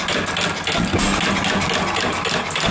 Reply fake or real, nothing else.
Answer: real